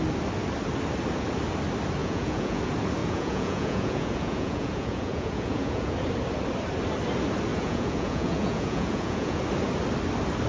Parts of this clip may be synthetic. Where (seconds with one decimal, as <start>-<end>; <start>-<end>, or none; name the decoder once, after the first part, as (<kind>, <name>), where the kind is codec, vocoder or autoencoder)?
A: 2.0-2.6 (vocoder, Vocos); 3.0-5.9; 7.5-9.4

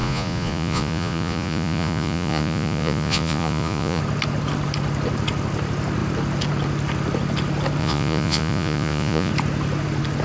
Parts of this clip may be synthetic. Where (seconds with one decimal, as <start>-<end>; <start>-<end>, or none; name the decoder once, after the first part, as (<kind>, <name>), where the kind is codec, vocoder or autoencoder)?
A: 0.0-4.0 (vocoder, Vocos); 7.8-9.3

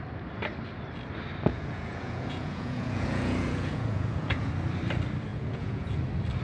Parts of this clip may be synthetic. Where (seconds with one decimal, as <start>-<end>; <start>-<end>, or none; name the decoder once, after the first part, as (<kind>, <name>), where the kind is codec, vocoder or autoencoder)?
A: 1.5-4.5 (vocoder, Vocos); 5.3-5.9

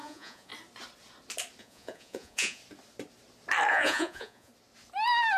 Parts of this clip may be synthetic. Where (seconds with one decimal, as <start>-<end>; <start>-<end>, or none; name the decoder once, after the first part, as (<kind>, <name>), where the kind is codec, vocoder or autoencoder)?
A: 0.0-0.5 (vocoder, Vocos); 1.6-2.6; 3.7-4.5

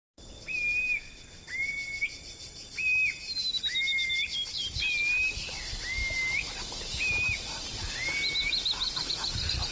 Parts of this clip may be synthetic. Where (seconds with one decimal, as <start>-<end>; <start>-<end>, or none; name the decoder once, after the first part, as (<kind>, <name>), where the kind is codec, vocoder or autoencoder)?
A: none

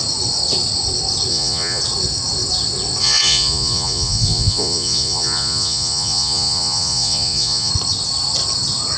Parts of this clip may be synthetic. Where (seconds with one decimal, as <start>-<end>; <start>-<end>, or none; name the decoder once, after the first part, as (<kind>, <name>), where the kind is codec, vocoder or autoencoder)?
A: 1.3-1.8 (vocoder, Vocos); 3.0-7.7